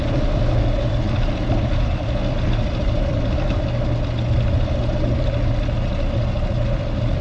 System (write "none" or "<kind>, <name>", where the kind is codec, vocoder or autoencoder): none